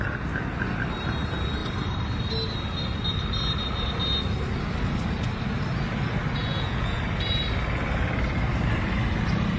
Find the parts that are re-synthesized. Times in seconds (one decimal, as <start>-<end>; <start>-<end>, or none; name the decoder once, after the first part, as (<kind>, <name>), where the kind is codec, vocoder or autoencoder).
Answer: 6.4-7.0 (vocoder, Vocos)